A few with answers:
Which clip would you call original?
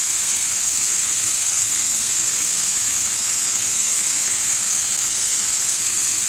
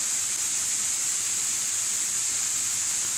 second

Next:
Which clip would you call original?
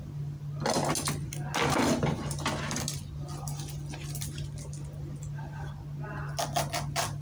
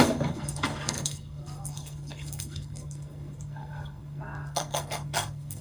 first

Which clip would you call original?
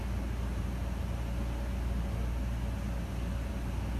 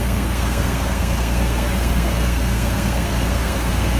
first